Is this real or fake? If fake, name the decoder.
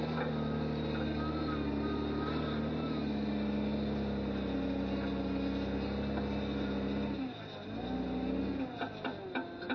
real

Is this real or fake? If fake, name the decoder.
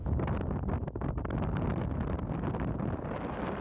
real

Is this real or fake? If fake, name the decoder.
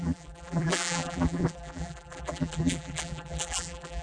fake, vocoder, BigVGAN v2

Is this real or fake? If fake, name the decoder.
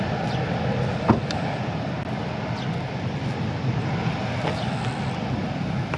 real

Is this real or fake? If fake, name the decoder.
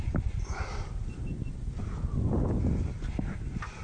real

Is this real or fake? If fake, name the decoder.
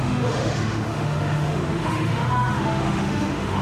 fake, autoencoder, DAC-VAE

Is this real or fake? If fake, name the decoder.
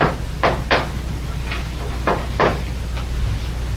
real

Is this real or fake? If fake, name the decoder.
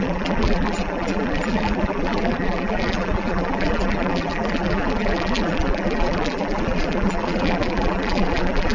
fake, vocoder, BigVGAN v2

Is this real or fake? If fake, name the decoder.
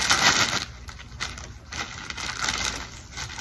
real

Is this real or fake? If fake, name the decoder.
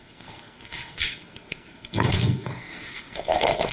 fake, codec, SNAC